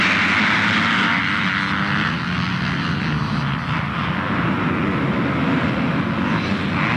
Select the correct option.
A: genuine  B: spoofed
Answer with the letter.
A